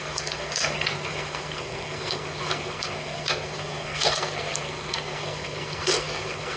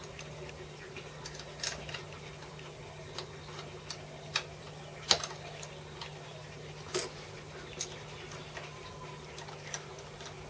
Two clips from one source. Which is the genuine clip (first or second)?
second